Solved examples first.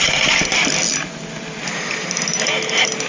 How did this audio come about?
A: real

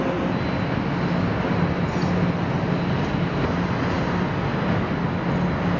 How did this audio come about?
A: real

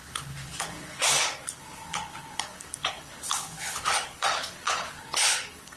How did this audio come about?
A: fake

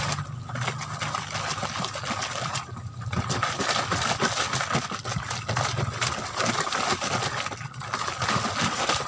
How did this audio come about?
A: real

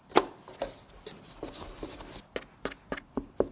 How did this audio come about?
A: real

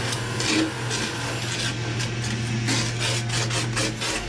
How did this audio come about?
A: real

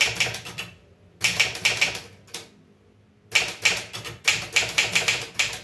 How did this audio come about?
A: real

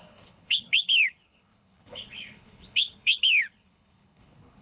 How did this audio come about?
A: fake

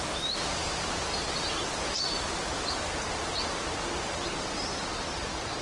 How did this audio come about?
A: real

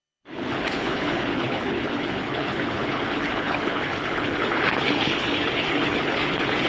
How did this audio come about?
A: fake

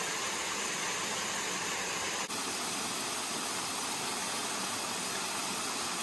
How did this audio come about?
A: real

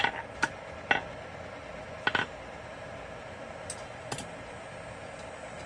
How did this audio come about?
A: real